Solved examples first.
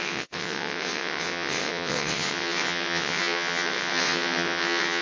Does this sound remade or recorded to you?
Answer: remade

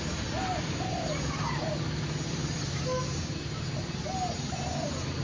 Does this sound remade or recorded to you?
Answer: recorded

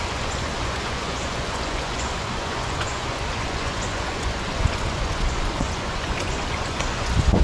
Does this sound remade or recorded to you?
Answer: remade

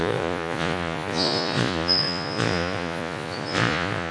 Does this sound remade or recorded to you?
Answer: remade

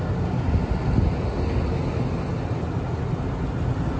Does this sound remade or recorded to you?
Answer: recorded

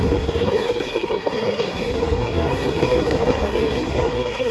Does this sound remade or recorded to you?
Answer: remade